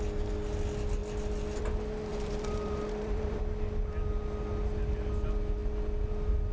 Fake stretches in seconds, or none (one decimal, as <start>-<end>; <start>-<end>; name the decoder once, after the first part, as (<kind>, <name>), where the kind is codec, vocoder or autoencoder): 2.1-3.4 (vocoder, BigVGAN v2)